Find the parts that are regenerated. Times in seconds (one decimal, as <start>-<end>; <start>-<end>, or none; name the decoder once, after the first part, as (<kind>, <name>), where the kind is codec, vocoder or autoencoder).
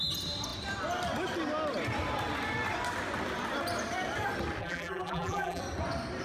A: 4.6-5.6 (vocoder, BigVGAN v2)